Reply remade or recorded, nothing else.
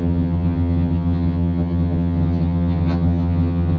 remade